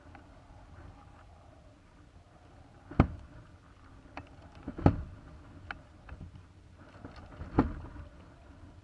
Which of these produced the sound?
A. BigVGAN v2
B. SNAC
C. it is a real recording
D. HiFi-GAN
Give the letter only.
C